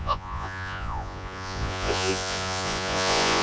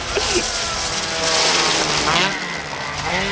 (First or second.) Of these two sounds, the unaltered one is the second